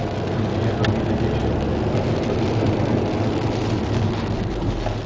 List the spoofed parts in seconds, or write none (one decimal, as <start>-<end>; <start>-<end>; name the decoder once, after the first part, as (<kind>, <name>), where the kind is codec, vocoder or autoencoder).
none